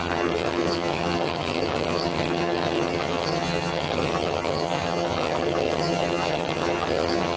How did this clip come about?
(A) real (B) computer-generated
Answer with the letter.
B